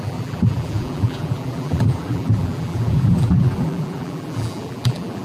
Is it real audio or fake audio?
fake